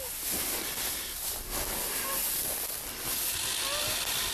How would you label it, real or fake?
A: real